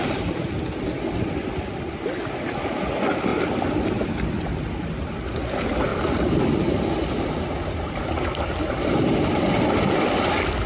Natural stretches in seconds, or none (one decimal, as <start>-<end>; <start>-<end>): 0.0-10.7